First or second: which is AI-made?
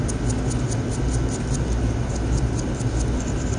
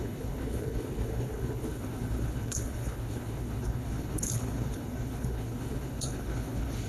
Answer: second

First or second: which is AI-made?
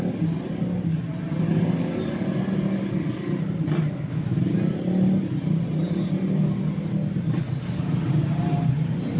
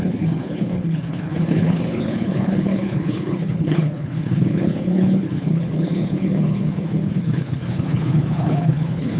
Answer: second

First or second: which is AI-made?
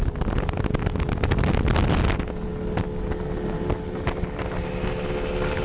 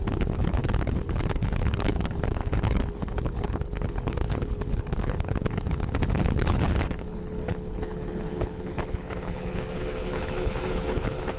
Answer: second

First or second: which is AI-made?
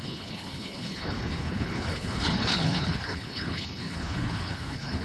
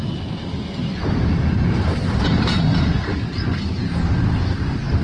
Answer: first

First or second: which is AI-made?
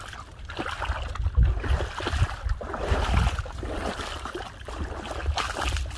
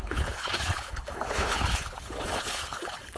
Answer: second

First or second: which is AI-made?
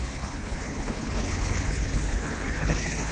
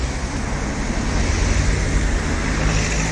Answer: first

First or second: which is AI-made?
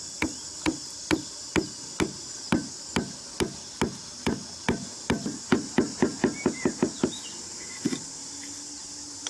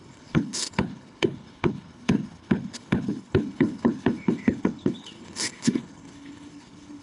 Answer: second